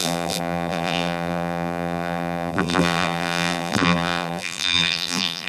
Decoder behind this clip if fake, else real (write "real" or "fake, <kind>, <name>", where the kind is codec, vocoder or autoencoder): fake, vocoder, BigVGAN v2